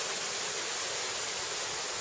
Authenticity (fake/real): real